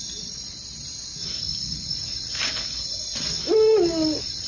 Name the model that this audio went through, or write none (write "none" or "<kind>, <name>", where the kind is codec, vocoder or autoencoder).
vocoder, BigVGAN v2